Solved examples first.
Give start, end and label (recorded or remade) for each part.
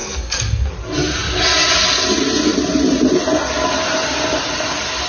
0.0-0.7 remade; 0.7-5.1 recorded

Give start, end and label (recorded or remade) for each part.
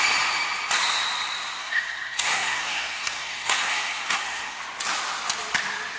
0.0-1.6 recorded; 1.6-4.6 remade; 4.6-6.0 recorded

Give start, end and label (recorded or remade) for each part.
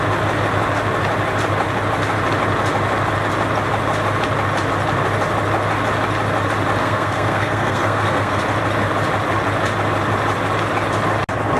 0.0-6.8 recorded; 6.8-8.4 remade; 8.4-11.6 recorded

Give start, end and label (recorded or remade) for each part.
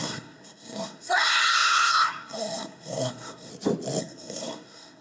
0.0-3.5 remade; 3.5-4.0 recorded; 4.0-5.0 remade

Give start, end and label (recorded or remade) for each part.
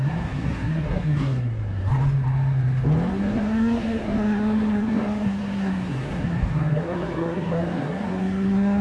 0.0-1.9 remade; 1.9-3.1 recorded; 3.1-8.8 remade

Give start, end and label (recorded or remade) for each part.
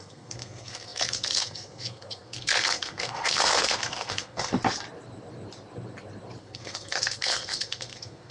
0.0-4.5 remade; 4.5-6.4 recorded; 6.4-8.3 remade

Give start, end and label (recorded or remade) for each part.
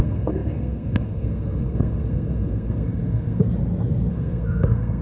0.0-3.4 remade; 3.4-4.1 recorded; 4.1-5.0 remade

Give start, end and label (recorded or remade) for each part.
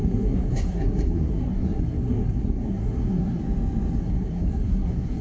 0.0-3.4 remade; 3.4-4.0 recorded; 4.0-5.2 remade